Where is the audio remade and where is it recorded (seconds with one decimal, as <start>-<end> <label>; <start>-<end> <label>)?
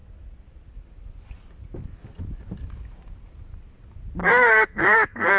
0.0-4.2 recorded; 4.2-5.4 remade